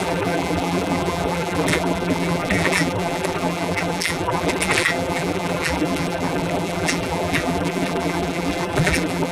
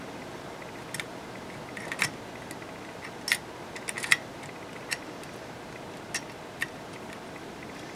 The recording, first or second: second